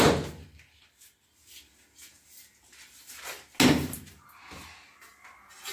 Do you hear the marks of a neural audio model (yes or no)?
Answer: no